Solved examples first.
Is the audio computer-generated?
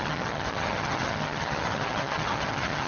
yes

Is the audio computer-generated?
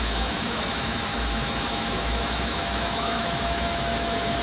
yes